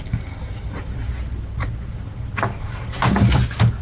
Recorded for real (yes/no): yes